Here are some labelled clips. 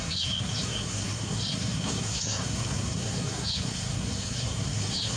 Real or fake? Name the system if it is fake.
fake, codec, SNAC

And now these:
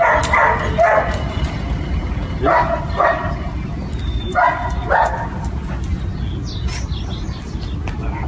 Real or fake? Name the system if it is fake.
real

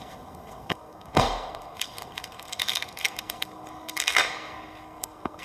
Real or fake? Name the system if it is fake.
fake, codec, SNAC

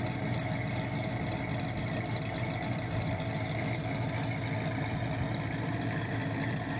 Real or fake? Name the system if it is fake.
real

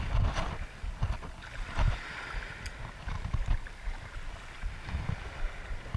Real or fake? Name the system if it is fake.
real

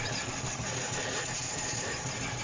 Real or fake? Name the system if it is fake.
fake, vocoder, BigVGAN v2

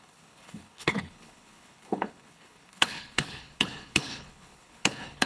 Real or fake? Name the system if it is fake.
fake, codec, HILCodec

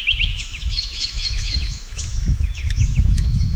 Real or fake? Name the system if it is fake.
fake, autoencoder, DAC-VAE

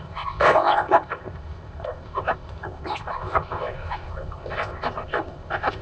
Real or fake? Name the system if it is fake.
fake, codec, ZipCodec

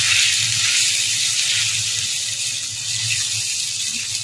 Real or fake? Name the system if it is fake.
real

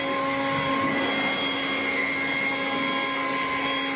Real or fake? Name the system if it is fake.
real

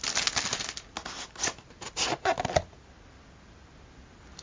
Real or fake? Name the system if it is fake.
real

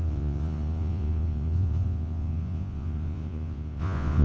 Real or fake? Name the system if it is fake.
fake, vocoder, Vocos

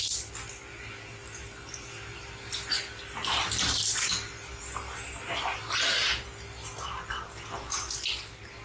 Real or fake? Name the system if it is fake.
real